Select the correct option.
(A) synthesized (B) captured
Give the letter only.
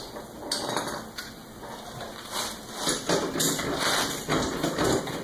A